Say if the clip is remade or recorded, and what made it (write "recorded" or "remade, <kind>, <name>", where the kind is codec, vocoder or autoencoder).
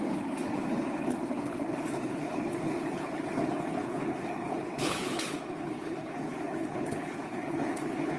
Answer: remade, codec, HILCodec